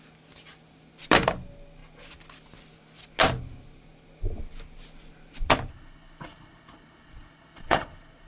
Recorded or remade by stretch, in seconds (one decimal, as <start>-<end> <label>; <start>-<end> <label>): 0.0-5.7 recorded; 5.7-8.3 remade